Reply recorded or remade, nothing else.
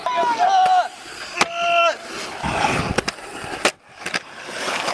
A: recorded